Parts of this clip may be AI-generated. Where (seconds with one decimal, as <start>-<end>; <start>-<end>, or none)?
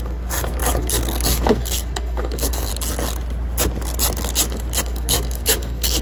0.0-2.7; 4.8-6.0